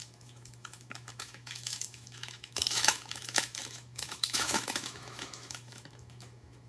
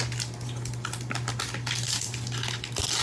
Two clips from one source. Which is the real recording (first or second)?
second